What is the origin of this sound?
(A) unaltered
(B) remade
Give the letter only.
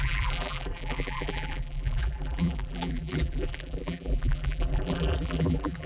B